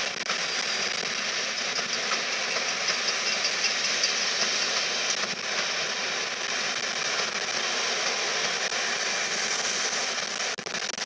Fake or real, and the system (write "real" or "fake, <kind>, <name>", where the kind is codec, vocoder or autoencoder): real